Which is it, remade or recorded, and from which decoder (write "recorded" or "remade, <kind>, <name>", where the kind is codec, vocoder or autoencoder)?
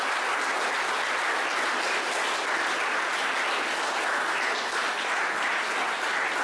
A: recorded